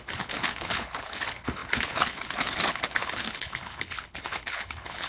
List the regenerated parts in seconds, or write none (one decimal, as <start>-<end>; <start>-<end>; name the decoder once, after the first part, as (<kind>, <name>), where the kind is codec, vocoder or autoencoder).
0.0-5.1 (codec, HILCodec)